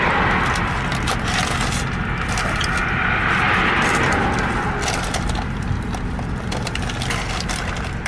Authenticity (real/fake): real